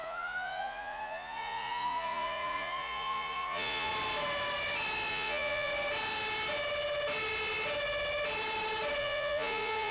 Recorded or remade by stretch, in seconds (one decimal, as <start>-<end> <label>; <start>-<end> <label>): 0.0-3.9 remade; 3.9-5.1 recorded; 5.1-5.7 remade; 5.7-9.0 recorded; 9.0-9.9 remade